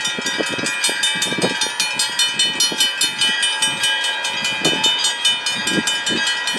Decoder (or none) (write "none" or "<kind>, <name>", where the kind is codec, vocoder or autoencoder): none